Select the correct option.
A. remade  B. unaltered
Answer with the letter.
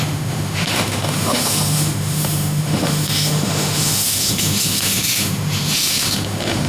A